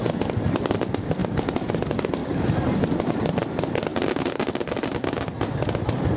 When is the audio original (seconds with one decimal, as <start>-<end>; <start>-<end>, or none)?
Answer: 0.0-6.2

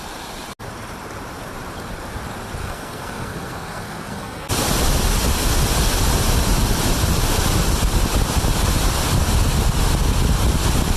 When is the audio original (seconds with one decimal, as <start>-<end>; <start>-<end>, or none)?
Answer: 0.0-2.6; 4.5-11.0